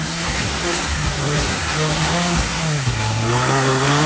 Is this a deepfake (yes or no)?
yes